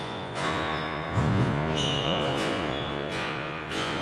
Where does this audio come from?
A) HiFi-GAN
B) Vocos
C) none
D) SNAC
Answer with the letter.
B